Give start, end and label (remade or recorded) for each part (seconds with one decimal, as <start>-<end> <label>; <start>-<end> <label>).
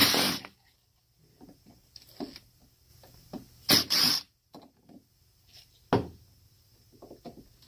0.0-7.7 recorded